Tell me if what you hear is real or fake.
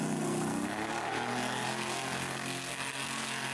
fake